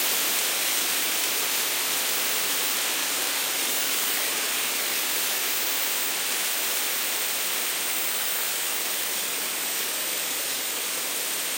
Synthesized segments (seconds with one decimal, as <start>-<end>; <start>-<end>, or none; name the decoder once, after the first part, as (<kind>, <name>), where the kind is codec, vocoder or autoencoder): 0.5-1.1 (codec, DAC); 3.0-5.4; 7.9-11.0